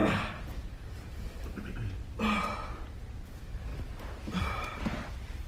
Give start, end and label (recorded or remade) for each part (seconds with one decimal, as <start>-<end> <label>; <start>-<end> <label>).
0.0-1.6 remade; 1.6-3.7 recorded; 3.7-4.9 remade; 4.9-5.5 recorded